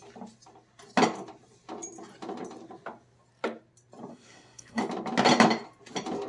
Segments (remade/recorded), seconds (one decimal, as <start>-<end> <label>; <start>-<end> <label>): 0.0-4.1 recorded; 4.1-4.8 remade; 4.8-6.3 recorded